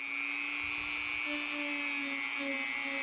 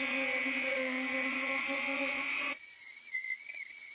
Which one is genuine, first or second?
first